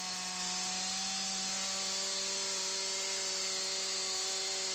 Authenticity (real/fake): real